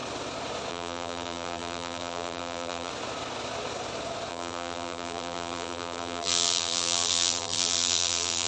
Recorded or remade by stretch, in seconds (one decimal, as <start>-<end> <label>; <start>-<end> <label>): 0.0-0.7 recorded; 0.7-2.9 remade; 2.9-4.3 recorded; 4.3-8.5 remade